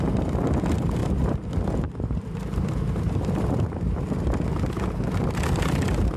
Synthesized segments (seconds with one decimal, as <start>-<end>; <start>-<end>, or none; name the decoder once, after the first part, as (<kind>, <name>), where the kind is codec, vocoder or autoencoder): 1.0-4.0 (vocoder, BigVGAN v2)